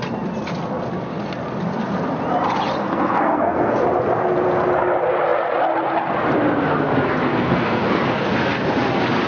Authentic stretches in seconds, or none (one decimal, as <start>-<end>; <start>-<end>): 0.0-2.8; 3.8-7.3; 8.0-9.3